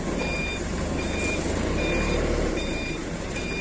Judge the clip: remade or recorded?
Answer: remade